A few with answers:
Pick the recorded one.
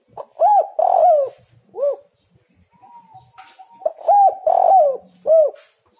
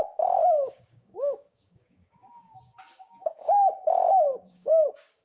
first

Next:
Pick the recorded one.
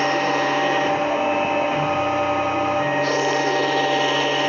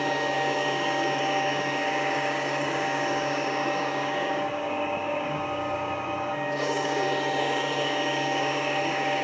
first